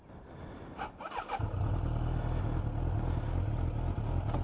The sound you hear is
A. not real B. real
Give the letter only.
B